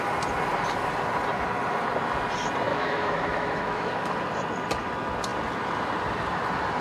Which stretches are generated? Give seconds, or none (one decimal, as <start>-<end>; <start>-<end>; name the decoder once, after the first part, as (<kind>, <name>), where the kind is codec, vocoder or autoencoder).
2.7-4.1 (autoencoder, DAC-VAE)